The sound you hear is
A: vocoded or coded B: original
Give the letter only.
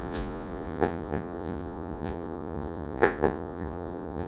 A